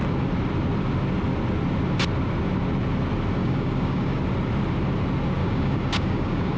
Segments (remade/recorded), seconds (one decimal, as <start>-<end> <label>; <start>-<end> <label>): 0.0-3.4 recorded; 3.4-4.2 remade; 4.2-5.4 recorded; 5.4-6.6 remade